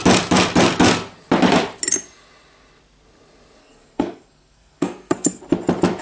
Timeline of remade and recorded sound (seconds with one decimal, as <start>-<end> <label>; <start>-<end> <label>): 0.0-3.6 recorded; 3.6-5.4 remade; 5.4-6.0 recorded